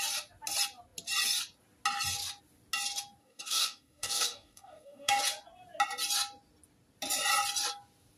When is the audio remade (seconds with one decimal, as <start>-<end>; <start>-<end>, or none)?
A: 3.2-5.2